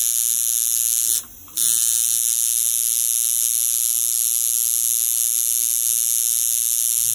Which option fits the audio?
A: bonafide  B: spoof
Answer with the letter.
A